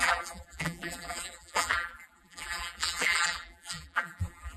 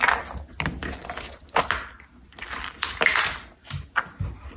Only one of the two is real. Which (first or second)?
second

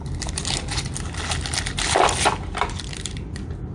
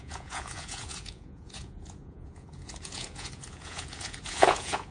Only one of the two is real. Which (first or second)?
first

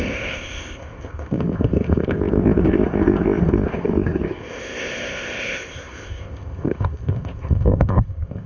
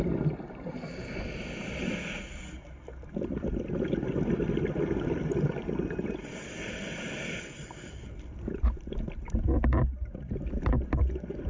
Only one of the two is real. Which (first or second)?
second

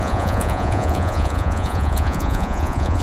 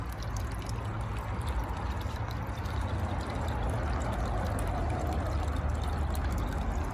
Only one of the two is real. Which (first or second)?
second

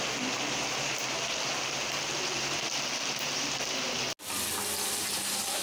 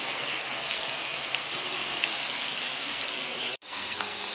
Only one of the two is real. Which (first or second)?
first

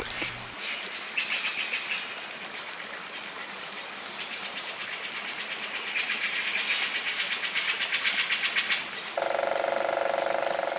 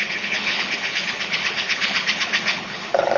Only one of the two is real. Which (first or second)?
first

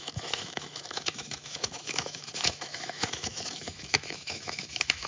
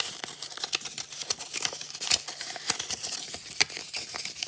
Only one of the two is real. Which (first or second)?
second